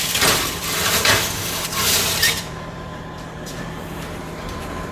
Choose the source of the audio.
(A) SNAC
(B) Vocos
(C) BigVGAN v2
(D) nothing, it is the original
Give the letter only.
C